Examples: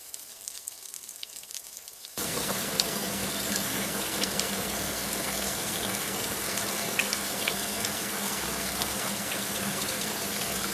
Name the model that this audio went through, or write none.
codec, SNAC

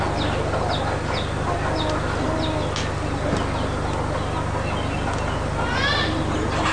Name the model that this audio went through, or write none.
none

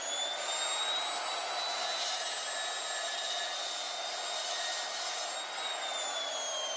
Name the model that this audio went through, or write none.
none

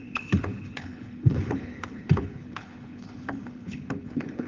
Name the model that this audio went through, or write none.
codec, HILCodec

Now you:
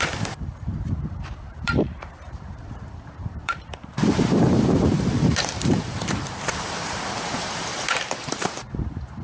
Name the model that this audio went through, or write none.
vocoder, BigVGAN v2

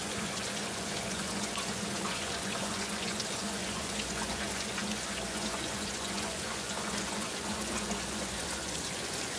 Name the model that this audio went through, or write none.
vocoder, Vocos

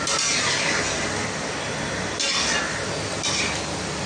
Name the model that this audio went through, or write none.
none